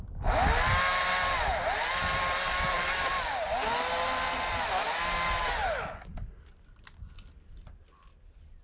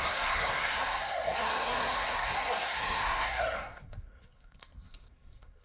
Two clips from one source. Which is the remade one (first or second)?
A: second